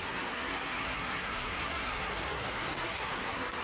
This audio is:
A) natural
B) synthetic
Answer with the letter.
B